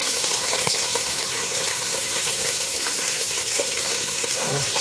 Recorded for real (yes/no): no